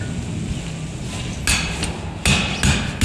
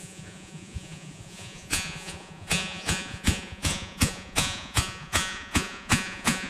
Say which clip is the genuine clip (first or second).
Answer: first